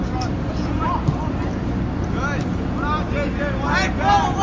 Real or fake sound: real